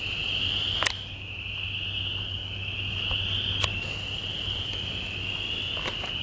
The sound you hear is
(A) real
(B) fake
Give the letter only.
A